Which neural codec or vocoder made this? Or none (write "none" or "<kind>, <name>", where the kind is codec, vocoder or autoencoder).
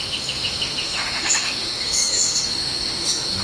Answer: autoencoder, DAC-VAE